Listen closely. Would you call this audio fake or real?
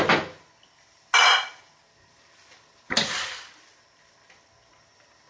real